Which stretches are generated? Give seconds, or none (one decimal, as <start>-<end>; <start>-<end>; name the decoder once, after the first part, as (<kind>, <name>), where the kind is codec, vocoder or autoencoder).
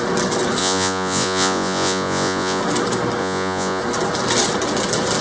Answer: 0.6-2.6 (vocoder, Vocos); 3.2-3.8